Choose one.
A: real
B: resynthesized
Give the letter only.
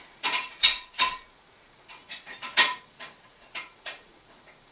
B